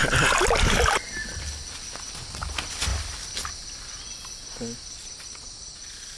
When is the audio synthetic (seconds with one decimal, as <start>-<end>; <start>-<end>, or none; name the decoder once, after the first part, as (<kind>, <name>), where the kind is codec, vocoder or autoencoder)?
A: none